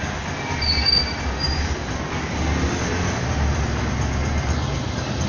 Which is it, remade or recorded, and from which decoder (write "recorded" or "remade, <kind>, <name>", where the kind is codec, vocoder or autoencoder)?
recorded